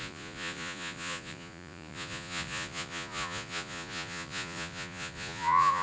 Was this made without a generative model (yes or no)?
no